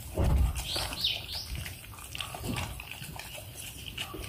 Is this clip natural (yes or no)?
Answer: yes